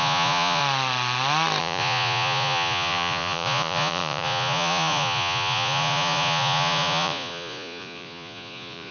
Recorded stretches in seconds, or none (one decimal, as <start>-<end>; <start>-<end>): 0.6-1.6